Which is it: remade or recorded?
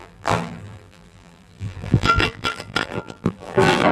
remade